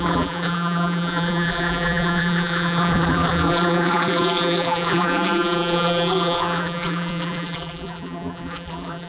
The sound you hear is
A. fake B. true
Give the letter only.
A